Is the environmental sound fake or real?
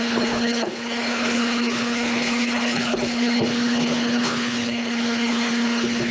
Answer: fake